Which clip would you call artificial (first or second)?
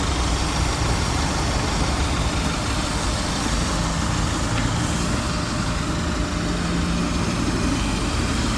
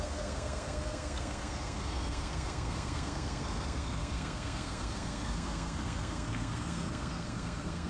second